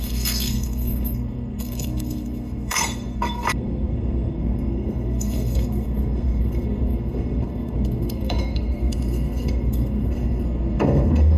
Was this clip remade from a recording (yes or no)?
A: yes